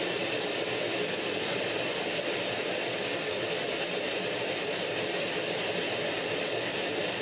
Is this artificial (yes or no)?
no